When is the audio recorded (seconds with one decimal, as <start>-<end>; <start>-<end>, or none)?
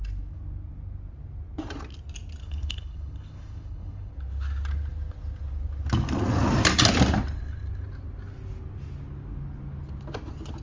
0.0-2.4; 4.1-10.6